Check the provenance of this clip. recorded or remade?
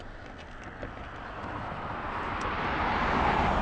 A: recorded